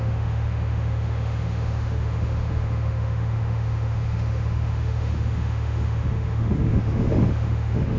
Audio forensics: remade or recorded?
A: remade